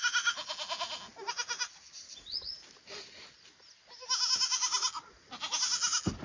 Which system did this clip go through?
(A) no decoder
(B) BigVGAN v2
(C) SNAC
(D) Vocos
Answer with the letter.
A